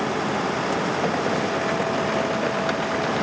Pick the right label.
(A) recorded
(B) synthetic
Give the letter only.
A